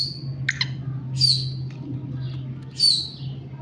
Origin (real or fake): real